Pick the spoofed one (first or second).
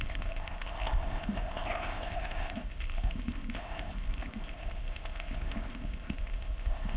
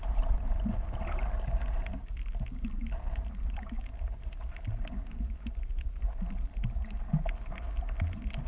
first